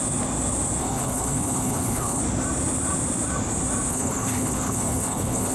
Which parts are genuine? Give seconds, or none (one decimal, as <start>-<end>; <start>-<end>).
0.0-0.8; 2.2-3.9